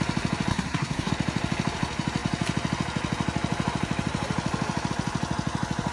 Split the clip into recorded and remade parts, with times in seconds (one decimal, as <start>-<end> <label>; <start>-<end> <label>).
0.0-0.5 recorded; 0.5-1.1 remade; 1.1-5.9 recorded